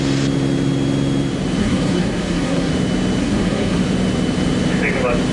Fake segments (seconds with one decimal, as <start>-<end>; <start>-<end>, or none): 1.6-2.7; 3.2-3.8